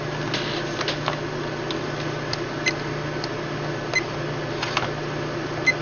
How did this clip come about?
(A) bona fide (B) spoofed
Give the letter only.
A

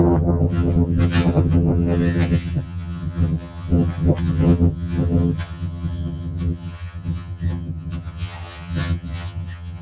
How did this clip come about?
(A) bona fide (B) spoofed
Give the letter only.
B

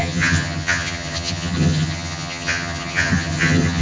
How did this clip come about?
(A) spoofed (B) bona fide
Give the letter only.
A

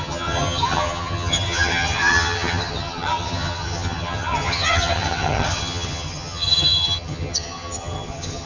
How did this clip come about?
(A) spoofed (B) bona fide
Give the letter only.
A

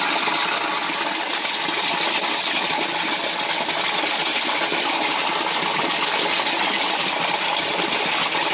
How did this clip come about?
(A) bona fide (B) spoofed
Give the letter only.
A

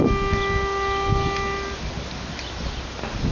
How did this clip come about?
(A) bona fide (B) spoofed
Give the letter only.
A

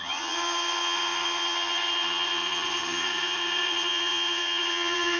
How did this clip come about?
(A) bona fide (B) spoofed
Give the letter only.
B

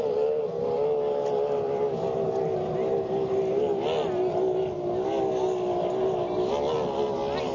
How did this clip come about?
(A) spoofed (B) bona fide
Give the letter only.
B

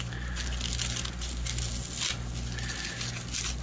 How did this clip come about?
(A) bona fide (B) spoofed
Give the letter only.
A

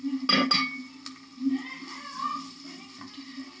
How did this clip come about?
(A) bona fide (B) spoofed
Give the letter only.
A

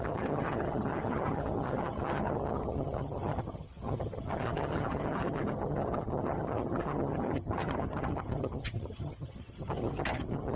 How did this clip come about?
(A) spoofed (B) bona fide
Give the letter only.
A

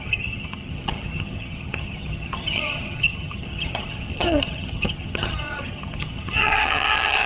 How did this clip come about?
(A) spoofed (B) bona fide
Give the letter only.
A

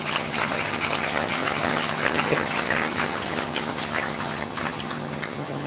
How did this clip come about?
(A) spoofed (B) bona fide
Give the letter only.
A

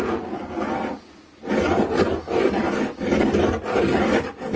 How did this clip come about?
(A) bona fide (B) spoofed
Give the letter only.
A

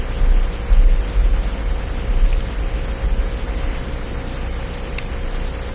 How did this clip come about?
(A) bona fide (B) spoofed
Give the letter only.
A